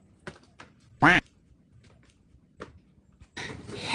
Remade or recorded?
recorded